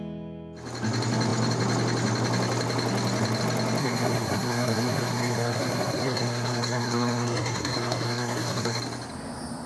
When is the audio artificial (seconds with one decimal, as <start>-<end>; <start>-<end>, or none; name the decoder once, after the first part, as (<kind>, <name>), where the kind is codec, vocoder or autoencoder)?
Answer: 3.8-8.8 (codec, SNAC)